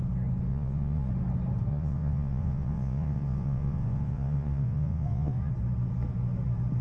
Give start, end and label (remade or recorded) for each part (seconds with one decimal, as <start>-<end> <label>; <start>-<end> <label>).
0.0-0.5 recorded; 0.5-1.1 remade; 1.1-1.7 recorded; 1.7-5.5 remade; 5.5-6.8 recorded